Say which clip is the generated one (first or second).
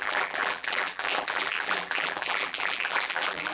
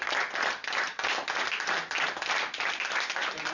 first